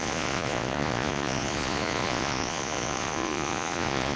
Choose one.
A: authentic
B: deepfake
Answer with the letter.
B